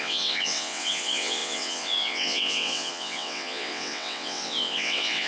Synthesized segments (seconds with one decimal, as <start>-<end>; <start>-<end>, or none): 0.0-5.3